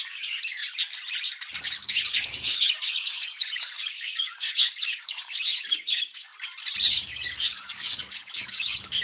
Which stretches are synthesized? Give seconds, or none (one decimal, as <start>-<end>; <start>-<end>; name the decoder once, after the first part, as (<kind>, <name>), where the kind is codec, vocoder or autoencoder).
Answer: 0.0-0.6 (codec, DAC); 1.6-6.3; 6.9-9.0